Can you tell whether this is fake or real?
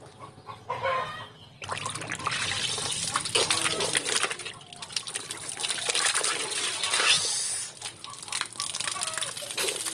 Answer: real